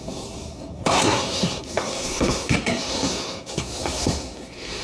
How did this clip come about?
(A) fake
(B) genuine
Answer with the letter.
A